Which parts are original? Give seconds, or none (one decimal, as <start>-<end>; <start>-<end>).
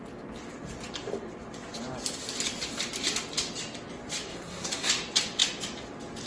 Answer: 0.0-4.3; 4.9-6.3